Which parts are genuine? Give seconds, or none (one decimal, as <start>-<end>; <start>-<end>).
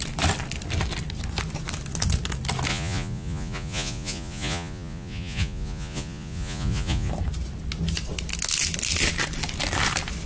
0.0-2.7; 7.1-10.3